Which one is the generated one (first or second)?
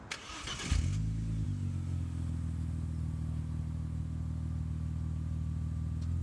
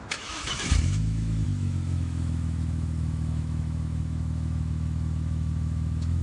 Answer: second